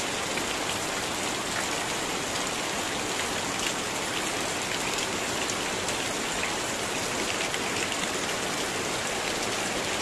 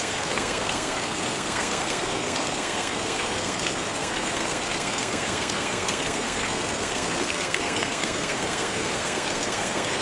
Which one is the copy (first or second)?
second